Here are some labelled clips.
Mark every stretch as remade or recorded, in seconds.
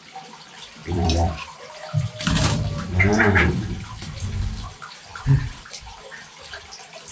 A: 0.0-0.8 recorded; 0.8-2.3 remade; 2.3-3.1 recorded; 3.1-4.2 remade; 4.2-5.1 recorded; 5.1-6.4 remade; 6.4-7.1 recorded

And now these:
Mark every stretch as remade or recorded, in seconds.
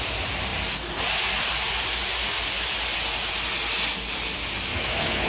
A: 0.0-4.7 recorded; 4.7-5.3 remade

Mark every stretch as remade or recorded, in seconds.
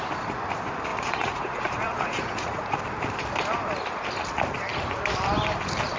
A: 0.0-0.9 recorded; 0.9-2.8 remade; 2.8-6.0 recorded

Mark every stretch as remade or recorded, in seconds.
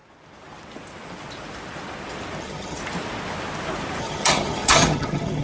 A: 0.0-2.4 recorded; 2.4-2.8 remade; 2.8-4.0 recorded; 4.0-5.4 remade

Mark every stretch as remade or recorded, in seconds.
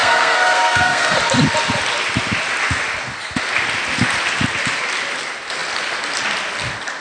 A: 0.0-1.2 remade; 1.2-7.0 recorded